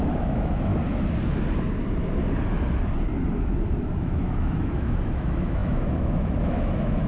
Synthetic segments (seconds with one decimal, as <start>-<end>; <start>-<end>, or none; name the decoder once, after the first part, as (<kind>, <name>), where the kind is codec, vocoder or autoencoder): 0.0-0.7 (autoencoder, DAC-VAE); 4.0-7.1